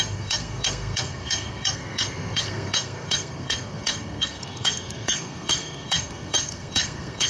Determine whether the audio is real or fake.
fake